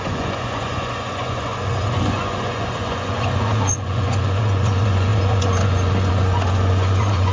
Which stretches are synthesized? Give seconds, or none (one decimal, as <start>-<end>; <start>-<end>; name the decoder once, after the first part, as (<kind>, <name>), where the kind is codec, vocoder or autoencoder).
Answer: 0.0-7.3 (vocoder, Vocos)